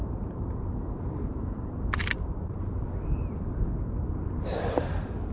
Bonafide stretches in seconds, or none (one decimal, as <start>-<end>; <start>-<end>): 0.0-5.3